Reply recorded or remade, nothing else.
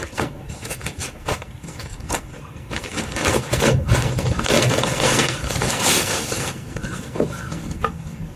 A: remade